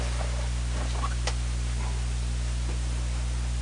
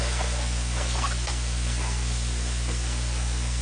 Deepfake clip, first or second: second